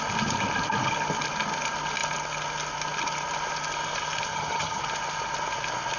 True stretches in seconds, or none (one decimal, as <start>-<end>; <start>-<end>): 0.0-4.3; 4.8-6.0